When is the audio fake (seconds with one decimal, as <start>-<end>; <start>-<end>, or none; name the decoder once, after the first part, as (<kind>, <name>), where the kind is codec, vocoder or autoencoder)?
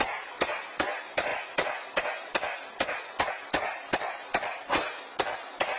none